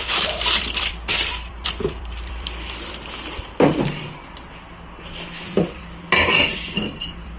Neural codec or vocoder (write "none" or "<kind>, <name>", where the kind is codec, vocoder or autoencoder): vocoder, BigVGAN v2